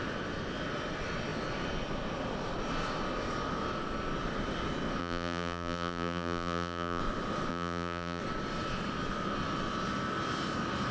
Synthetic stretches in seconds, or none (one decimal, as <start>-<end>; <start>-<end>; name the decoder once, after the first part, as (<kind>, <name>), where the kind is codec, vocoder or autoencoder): 5.0-7.0 (vocoder, BigVGAN v2); 7.5-8.2